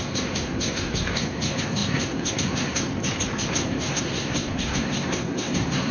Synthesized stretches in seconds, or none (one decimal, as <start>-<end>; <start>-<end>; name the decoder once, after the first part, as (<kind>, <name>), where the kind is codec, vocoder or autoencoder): 0.0-2.9 (codec, SNAC); 3.5-5.9

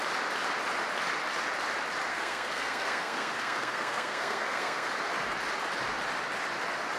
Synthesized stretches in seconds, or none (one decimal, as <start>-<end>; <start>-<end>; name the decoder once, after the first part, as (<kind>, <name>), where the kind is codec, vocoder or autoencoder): 2.1-4.9 (codec, SNAC)

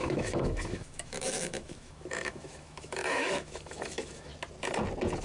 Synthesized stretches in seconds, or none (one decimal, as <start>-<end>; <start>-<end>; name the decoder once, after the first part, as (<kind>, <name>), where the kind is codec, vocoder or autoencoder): 0.0-4.3 (autoencoder, DAC-VAE)

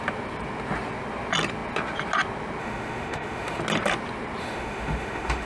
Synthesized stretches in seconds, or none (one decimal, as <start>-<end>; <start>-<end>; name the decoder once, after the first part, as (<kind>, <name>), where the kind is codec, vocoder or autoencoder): 2.6-3.6 (autoencoder, DAC-VAE); 4.4-5.5